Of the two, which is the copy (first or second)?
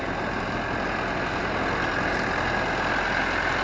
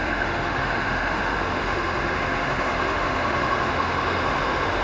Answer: second